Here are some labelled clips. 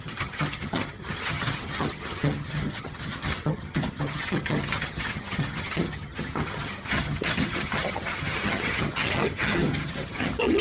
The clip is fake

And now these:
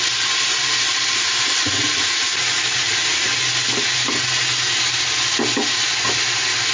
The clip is real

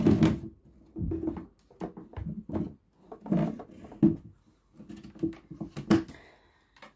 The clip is real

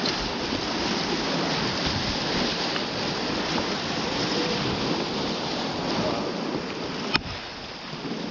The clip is real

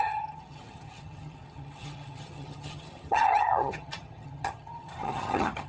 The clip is fake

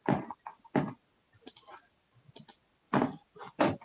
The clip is real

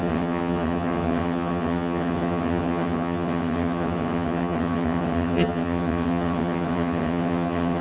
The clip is fake